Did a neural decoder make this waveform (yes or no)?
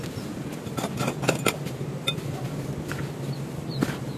no